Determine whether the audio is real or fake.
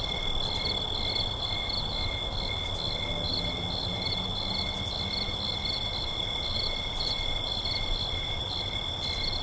real